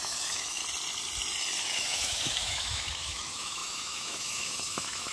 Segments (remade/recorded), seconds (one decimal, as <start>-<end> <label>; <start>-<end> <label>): 0.0-0.6 remade; 0.6-1.6 recorded; 1.6-5.1 remade

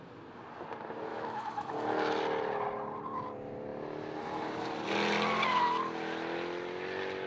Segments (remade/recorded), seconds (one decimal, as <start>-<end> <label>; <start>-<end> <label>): 0.0-1.1 recorded; 1.1-1.7 remade; 1.7-7.3 recorded

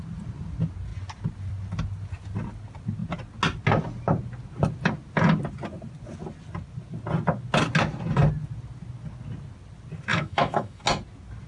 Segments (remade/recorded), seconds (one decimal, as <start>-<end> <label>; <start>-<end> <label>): 0.0-10.1 recorded; 10.1-10.8 remade; 10.8-11.5 recorded

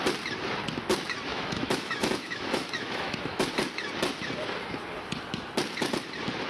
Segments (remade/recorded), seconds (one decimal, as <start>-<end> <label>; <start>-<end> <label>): 0.0-1.3 recorded; 1.3-3.5 remade; 3.5-6.5 recorded